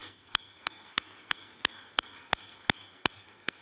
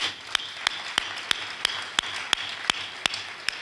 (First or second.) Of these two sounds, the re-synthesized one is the first